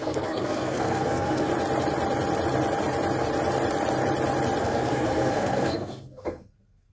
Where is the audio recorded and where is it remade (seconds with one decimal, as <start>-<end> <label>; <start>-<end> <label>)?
0.0-1.5 remade; 1.5-4.6 recorded; 4.6-6.9 remade